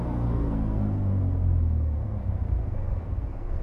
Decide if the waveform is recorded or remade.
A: remade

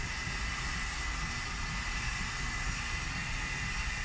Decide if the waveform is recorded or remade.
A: recorded